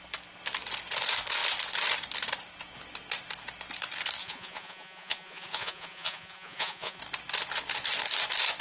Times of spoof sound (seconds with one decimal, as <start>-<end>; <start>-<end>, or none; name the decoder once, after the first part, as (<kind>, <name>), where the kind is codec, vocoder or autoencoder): 4.2-7.0 (vocoder, Vocos)